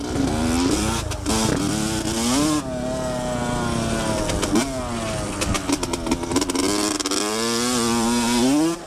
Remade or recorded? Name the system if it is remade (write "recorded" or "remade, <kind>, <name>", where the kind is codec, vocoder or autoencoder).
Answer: recorded